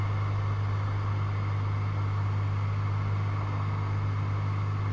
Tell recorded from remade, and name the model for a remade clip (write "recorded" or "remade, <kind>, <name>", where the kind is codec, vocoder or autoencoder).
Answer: recorded